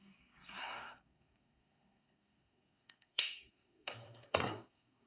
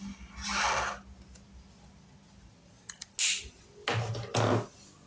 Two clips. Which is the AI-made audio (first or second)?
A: first